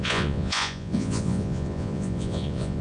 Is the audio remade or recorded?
remade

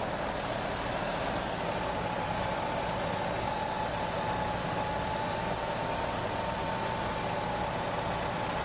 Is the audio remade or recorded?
recorded